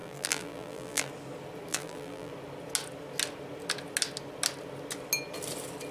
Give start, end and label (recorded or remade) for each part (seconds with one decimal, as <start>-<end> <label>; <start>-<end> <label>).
0.0-1.1 remade; 1.1-1.7 recorded; 1.7-2.3 remade; 2.3-5.9 recorded